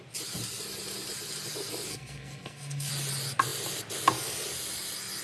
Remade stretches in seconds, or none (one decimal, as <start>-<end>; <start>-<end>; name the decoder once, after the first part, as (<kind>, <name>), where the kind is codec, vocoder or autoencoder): 1.9-2.9 (codec, SNAC)